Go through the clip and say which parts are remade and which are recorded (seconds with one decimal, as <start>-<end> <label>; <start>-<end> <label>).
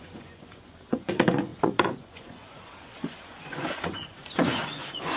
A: 0.0-5.2 remade